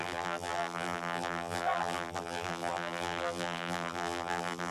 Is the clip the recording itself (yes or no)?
no